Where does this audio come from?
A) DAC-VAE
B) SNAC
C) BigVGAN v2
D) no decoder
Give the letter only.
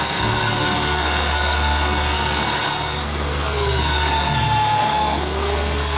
B